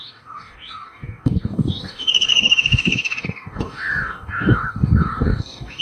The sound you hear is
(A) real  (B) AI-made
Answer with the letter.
B